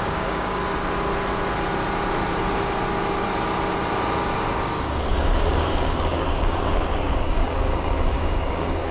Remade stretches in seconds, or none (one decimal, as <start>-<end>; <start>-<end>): 0.0-0.6; 4.8-8.9